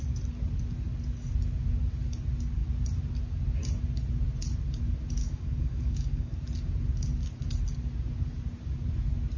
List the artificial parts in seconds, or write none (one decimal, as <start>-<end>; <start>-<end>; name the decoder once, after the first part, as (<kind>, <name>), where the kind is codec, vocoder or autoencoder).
5.2-6.4 (codec, DAC)